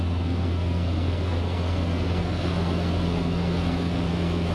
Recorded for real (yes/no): no